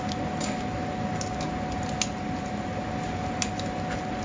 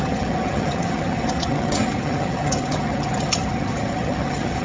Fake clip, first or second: second